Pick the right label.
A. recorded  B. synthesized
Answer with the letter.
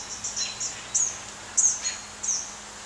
A